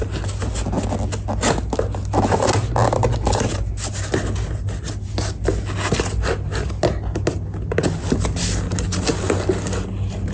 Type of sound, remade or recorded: recorded